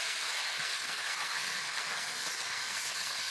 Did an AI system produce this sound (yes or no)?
yes